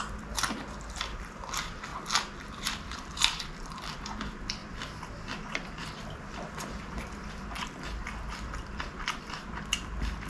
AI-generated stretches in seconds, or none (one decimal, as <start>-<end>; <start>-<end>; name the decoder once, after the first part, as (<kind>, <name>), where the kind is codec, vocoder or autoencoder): 0.0-1.9 (vocoder, BigVGAN v2); 2.5-4.6; 5.5-10.3